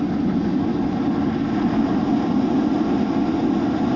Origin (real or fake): real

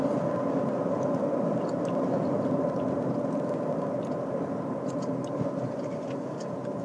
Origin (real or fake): real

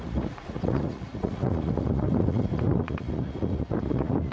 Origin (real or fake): fake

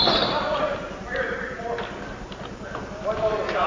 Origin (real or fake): real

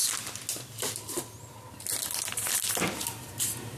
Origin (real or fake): real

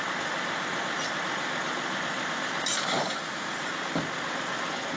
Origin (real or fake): real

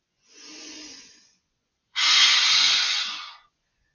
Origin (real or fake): fake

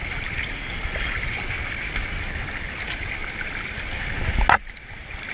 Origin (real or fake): real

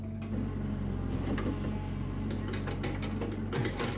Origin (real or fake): real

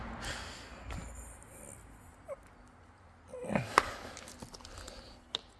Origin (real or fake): real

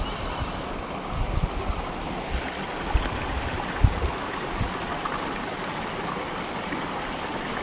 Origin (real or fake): real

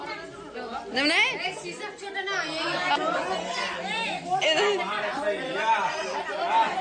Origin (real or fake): real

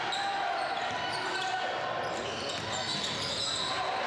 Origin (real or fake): real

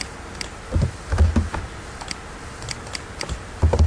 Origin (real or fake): real